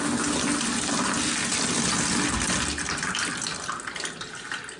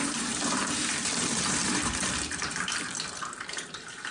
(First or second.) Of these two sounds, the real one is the first